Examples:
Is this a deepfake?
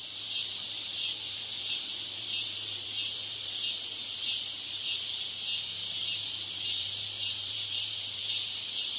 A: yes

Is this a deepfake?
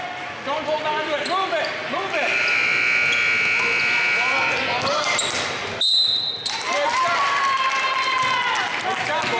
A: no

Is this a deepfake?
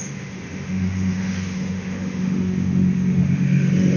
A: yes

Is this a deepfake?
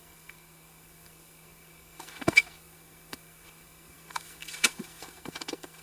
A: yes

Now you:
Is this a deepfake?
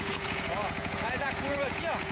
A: yes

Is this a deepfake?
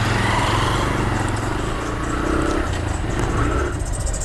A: no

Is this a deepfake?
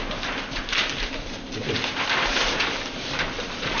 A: no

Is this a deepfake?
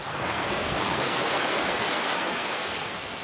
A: yes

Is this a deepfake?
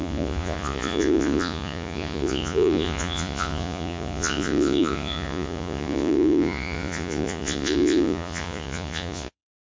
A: yes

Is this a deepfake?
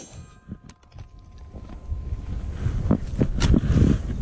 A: no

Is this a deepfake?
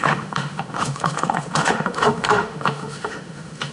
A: yes